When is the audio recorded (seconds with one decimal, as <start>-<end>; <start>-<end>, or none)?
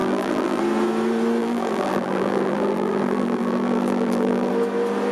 0.6-1.4; 4.5-5.1